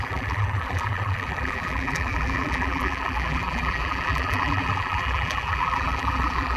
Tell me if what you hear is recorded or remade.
remade